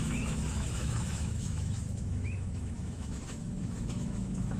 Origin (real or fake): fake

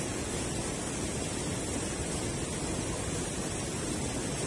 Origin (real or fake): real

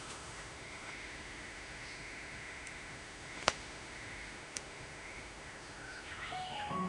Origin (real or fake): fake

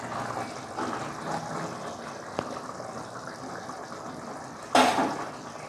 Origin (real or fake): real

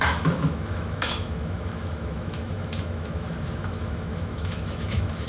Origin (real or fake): fake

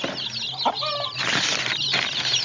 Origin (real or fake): real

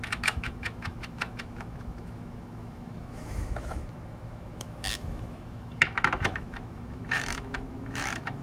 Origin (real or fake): fake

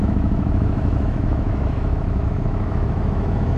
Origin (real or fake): fake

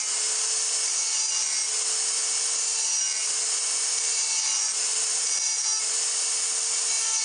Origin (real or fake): real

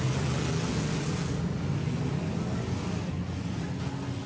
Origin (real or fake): real